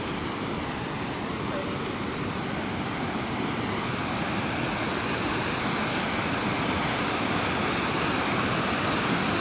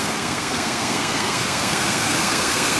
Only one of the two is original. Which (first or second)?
first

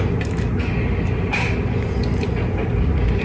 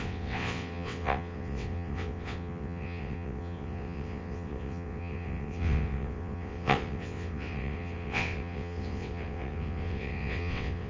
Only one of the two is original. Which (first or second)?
first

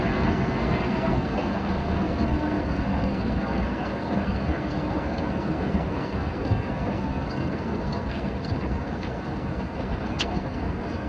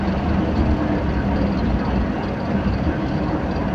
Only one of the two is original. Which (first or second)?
second